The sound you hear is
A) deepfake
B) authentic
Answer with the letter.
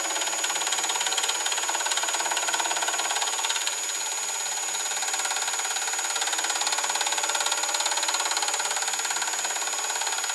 B